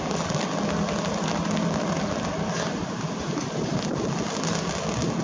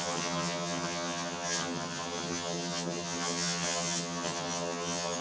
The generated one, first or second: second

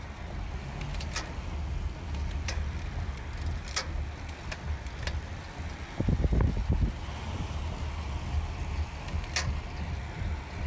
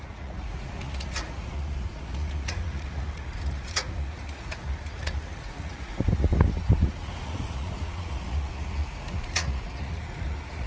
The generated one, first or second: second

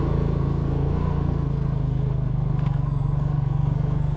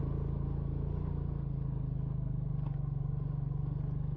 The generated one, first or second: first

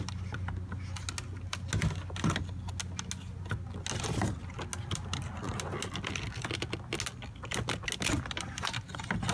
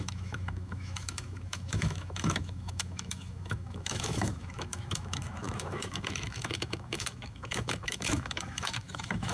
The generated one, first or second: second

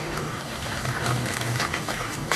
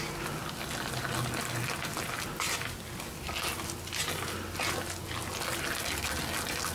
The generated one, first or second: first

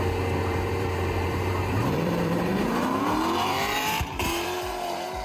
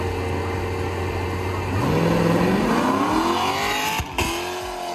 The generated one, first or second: first